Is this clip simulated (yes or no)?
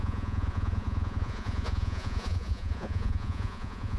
yes